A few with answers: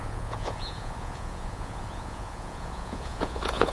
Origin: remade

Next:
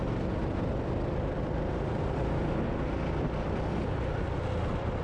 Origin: recorded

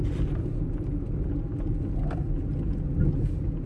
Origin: recorded